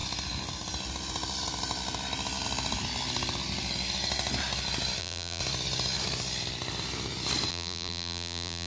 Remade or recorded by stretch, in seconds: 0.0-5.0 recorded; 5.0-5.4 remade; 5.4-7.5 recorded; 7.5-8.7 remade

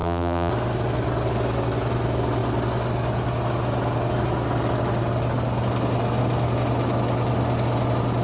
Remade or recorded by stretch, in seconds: 0.0-0.5 remade; 0.5-8.2 recorded